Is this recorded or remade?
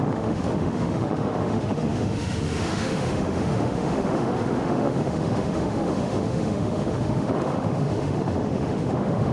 remade